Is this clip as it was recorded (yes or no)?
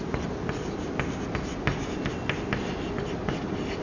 yes